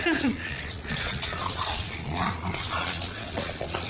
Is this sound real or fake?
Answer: fake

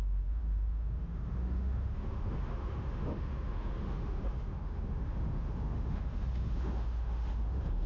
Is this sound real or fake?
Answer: fake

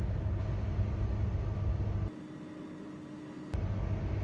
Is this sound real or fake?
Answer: real